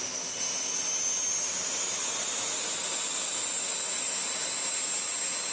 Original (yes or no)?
yes